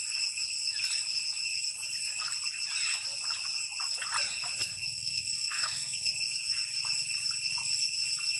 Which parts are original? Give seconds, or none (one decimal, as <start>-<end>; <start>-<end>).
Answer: 0.0-4.6; 6.1-8.4